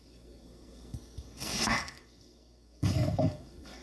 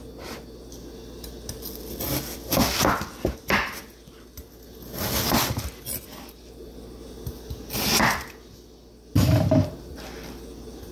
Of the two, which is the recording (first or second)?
second